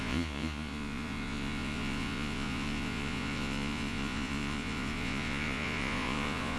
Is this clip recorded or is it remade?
remade